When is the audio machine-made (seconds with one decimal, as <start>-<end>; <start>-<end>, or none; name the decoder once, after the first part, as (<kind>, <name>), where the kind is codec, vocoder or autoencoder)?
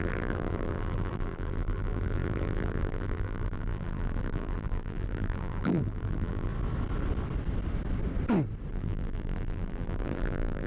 0.0-6.5 (vocoder, BigVGAN v2); 8.7-10.7